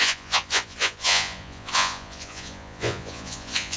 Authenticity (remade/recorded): remade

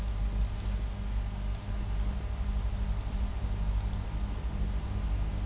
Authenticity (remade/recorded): recorded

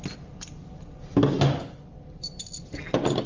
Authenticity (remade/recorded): recorded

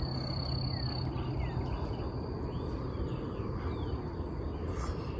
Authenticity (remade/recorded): recorded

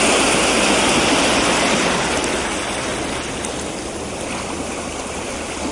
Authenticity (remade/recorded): recorded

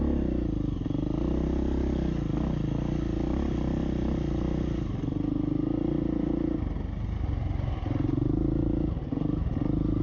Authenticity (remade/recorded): recorded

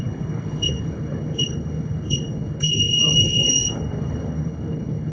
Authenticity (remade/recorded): remade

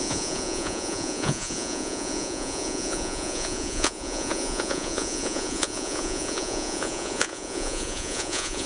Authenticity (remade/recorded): remade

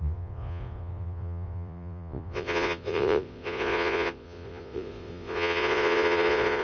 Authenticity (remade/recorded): remade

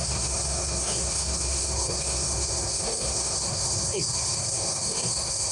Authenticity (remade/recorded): remade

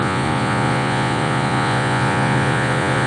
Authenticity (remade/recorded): remade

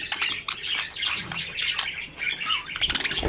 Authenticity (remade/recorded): recorded